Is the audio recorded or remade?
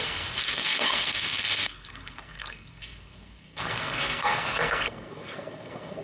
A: remade